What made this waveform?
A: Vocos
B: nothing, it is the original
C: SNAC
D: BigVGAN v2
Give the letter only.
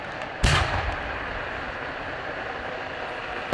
B